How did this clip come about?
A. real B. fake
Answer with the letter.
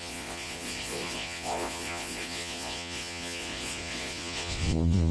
B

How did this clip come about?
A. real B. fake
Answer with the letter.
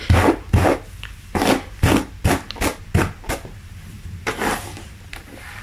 A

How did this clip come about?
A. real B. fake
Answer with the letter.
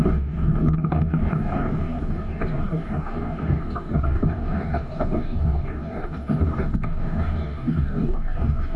B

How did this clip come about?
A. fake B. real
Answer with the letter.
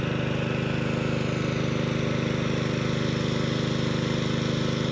B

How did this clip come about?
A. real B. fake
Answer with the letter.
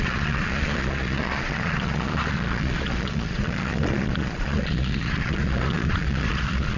B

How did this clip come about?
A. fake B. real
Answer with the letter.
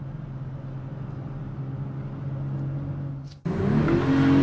B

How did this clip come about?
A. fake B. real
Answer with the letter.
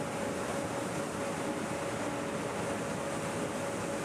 B